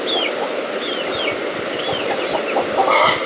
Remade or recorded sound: recorded